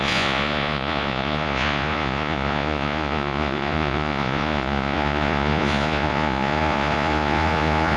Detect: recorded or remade remade